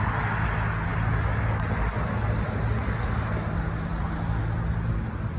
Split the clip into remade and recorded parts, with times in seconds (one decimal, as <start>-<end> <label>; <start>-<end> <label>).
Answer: 0.0-5.4 recorded